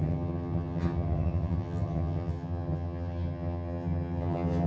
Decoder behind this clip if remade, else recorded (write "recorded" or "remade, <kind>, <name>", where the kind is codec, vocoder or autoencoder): remade, vocoder, HiFi-GAN